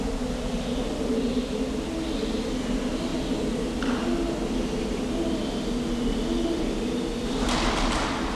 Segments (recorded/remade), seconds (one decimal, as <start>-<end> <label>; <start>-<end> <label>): 0.0-8.3 recorded